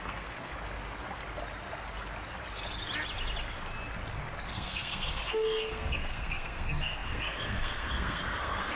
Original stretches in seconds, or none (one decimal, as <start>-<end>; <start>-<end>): 0.5-4.5